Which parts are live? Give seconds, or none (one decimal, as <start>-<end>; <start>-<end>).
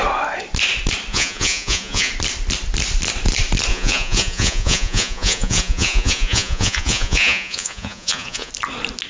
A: 0.0-1.1; 2.1-3.7; 8.5-9.1